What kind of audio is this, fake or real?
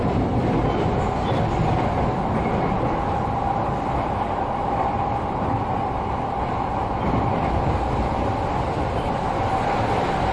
real